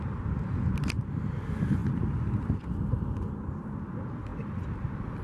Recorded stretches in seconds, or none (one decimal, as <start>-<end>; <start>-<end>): 0.0-1.8; 2.6-5.2